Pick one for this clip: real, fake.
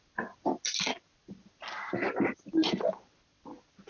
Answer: real